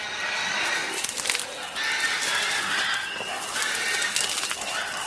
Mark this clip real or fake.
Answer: real